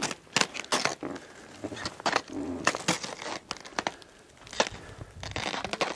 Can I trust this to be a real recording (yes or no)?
yes